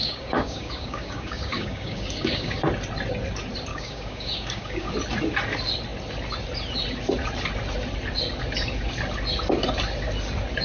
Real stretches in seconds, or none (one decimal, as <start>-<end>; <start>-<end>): 2.6-3.7; 4.9-10.6